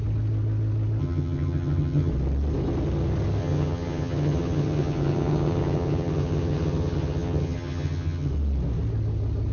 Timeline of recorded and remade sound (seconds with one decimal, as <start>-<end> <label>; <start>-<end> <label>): 0.0-1.0 recorded; 1.0-2.1 remade; 2.1-3.4 recorded; 3.4-8.3 remade; 8.3-9.5 recorded